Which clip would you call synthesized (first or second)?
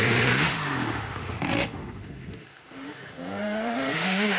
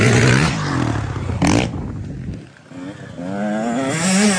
first